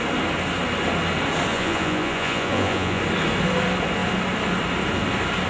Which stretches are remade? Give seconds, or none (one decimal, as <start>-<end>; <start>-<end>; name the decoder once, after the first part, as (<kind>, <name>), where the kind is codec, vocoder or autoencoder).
1.5-3.0 (vocoder, Vocos)

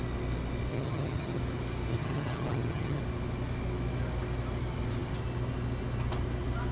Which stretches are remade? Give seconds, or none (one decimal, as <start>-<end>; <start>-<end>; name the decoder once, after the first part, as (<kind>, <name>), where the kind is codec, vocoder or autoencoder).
0.7-1.4 (vocoder, HiFi-GAN); 1.9-3.0

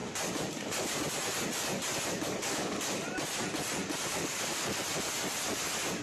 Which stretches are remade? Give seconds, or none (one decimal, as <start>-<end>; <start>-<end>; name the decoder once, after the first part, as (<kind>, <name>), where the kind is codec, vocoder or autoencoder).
2.4-3.0 (codec, DAC); 4.1-4.8

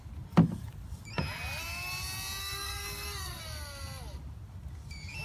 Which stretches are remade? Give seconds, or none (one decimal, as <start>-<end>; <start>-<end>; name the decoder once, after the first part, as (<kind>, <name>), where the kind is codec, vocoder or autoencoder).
2.4-3.4 (codec, SNAC)

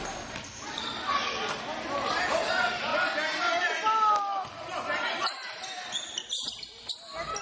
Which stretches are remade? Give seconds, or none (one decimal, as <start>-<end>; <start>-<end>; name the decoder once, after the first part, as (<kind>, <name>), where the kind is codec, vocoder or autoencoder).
none

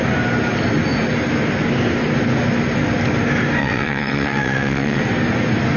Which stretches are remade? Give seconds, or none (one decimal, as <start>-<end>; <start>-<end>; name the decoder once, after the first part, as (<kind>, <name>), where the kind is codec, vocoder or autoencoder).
3.6-5.0 (vocoder, WaveNeXt)

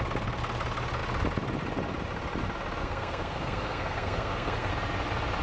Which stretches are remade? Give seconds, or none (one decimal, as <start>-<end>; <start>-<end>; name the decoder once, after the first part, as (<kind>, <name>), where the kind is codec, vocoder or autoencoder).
2.8-4.7 (codec, SNAC)

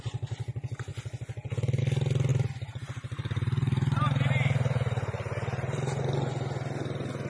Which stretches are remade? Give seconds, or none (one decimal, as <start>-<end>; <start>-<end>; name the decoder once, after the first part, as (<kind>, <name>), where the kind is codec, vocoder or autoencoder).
2.3-6.0 (vocoder, BigVGAN v2)